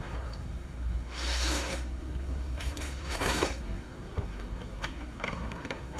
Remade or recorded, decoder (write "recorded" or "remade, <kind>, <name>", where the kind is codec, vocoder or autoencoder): remade, codec, SNAC